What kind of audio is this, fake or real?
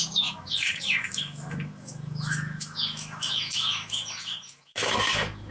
fake